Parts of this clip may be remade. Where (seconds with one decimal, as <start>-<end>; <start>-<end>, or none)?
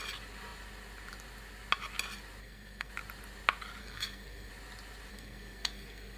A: 2.4-2.9; 3.8-4.5; 5.1-6.2